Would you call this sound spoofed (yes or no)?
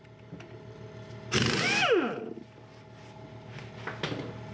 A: no